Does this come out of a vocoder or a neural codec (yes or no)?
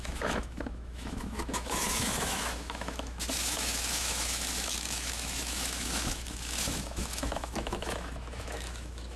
yes